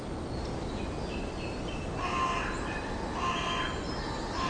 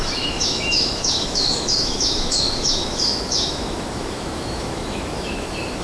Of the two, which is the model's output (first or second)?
second